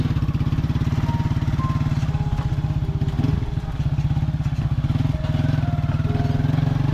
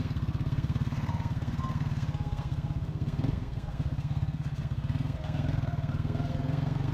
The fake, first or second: second